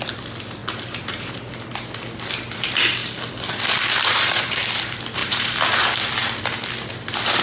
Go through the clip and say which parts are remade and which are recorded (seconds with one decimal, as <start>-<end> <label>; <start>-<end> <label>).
0.0-0.6 recorded; 0.6-1.5 remade; 1.5-5.2 recorded; 5.2-5.8 remade; 5.8-7.4 recorded

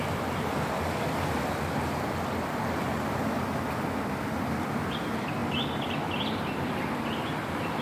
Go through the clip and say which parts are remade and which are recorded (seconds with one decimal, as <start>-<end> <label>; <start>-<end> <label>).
0.0-7.8 recorded

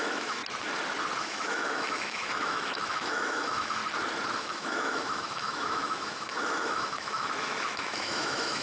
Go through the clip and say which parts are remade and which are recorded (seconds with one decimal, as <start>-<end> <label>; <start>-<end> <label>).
0.0-0.4 remade; 0.4-1.2 recorded; 1.2-3.8 remade; 3.8-4.4 recorded; 4.4-8.6 remade